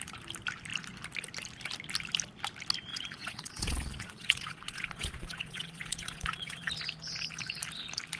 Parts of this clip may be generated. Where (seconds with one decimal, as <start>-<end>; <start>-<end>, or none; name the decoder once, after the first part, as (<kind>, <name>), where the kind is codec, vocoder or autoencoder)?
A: 2.9-6.7 (vocoder, Vocos)